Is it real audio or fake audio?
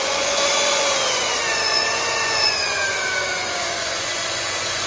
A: fake